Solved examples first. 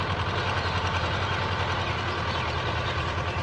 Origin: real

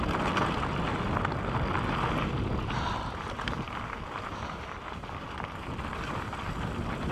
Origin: real